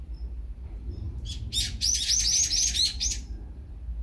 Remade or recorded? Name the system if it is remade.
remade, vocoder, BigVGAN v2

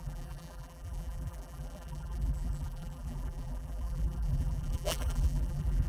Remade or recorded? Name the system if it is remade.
remade, vocoder, BigVGAN v2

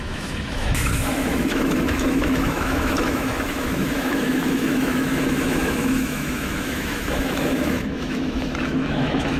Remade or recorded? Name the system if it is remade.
remade, autoencoder, DAC-VAE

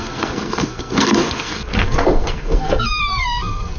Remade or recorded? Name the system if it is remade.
remade, codec, SNAC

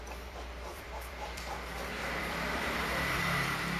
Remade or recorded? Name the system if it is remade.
remade, vocoder, BigVGAN v2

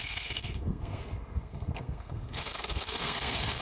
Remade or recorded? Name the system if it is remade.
remade, codec, SNAC